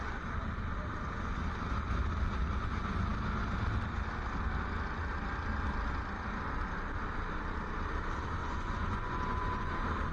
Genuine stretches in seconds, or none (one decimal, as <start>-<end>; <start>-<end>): 0.0-8.4; 9.7-10.1